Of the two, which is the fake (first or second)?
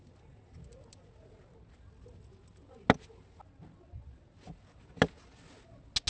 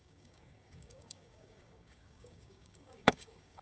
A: second